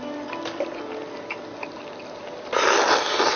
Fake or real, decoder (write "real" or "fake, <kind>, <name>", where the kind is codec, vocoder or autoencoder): real